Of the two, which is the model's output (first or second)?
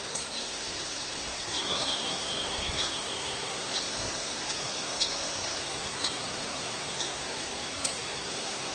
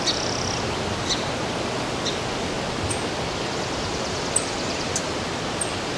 first